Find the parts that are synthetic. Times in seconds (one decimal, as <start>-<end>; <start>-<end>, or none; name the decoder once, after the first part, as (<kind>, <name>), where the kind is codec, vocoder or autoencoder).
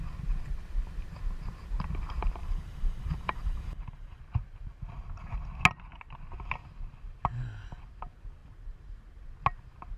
2.4-4.2 (vocoder, BigVGAN v2)